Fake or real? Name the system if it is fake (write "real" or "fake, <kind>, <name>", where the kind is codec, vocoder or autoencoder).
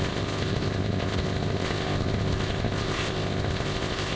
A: fake, codec, ZipCodec